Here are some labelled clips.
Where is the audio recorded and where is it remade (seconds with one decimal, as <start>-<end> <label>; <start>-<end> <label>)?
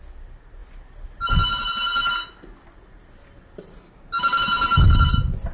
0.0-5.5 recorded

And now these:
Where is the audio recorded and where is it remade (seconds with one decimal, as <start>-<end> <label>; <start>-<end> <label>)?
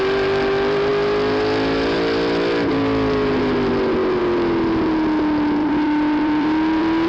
0.0-5.6 recorded; 5.6-7.1 remade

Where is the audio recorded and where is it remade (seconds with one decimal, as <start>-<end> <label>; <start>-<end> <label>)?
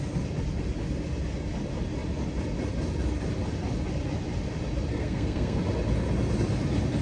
0.0-4.9 recorded; 4.9-5.6 remade; 5.6-7.0 recorded